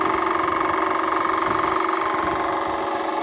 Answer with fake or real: real